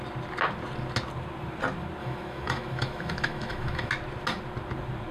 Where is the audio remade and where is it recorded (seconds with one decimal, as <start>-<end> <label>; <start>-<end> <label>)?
0.0-2.0 recorded; 2.0-3.9 remade; 3.9-5.1 recorded